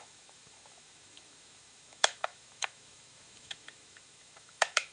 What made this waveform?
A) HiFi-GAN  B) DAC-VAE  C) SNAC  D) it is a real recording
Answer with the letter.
B